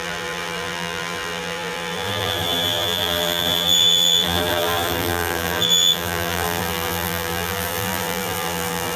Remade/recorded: remade